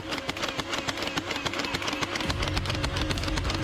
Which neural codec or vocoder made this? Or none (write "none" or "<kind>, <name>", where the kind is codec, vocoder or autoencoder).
none